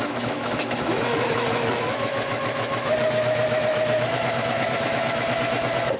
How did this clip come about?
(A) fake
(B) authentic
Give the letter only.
A